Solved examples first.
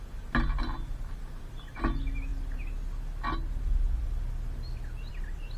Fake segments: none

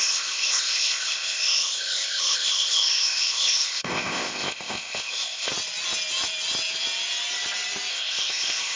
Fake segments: 0.0-5.5 (codec, ZipCodec); 7.9-8.8